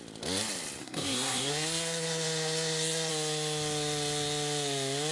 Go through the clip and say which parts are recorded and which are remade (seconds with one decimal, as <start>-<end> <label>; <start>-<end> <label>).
0.0-0.8 recorded; 0.8-3.1 remade; 3.1-5.1 recorded